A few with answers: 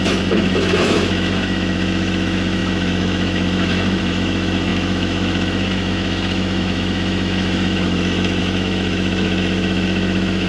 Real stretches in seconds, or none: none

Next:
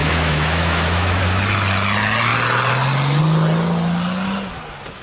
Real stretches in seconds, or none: 1.2-5.0

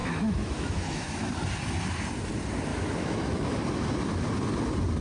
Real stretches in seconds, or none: 1.3-2.7; 3.6-5.0

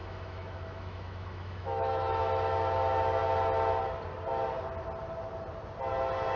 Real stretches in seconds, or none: 2.2-6.4

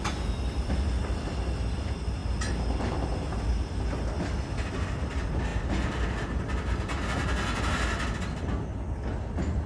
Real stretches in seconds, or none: 0.0-9.7

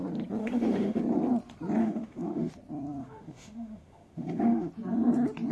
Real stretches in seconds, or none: 0.0-0.4; 1.0-1.8; 2.5-3.0; 4.7-5.5

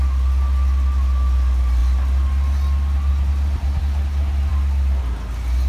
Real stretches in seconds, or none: 0.0-5.7